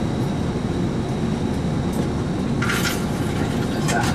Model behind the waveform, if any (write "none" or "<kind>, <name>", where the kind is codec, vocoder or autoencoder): none